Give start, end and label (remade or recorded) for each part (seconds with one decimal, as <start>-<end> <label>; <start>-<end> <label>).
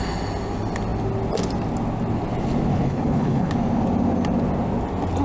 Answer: 0.0-2.7 recorded; 2.7-3.5 remade; 3.5-5.2 recorded